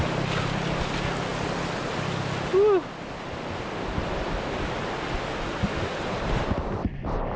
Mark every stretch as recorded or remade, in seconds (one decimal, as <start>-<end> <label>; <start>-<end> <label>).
0.0-7.4 recorded